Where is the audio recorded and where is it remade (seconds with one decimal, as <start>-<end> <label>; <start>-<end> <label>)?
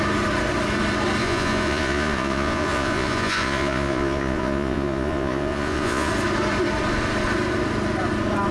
0.0-1.2 recorded; 1.2-6.1 remade; 6.1-8.5 recorded